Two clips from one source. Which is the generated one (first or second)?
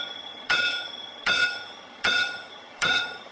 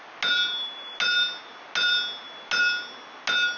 first